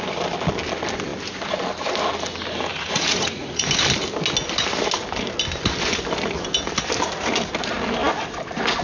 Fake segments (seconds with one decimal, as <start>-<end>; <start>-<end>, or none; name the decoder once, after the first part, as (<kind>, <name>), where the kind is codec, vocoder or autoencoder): 2.7-3.7 (vocoder, Vocos)